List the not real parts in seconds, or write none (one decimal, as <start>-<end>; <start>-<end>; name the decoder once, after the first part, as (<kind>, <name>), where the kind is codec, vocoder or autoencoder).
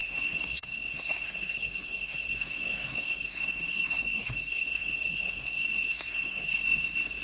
0.0-7.2 (codec, SNAC)